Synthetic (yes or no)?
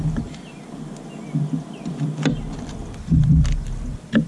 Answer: no